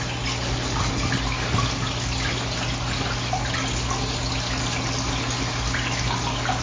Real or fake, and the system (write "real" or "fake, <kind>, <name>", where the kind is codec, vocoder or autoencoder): real